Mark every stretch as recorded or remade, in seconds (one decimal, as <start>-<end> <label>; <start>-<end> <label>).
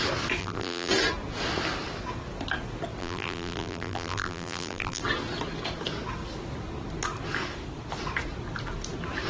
0.0-0.4 recorded; 0.4-0.9 remade; 0.9-3.0 recorded; 3.0-5.0 remade; 5.0-9.3 recorded